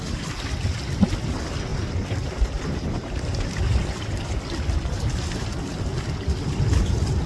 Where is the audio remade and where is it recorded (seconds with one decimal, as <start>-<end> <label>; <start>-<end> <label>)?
0.0-1.7 recorded; 1.7-4.4 remade; 4.4-7.3 recorded